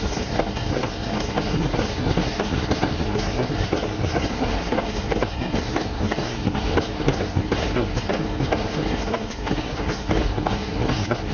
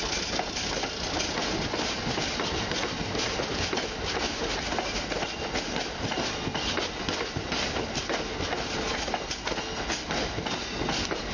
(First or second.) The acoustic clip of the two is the second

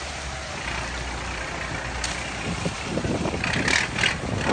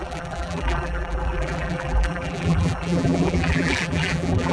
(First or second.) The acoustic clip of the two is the first